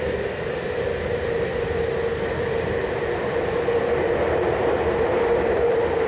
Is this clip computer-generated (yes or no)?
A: no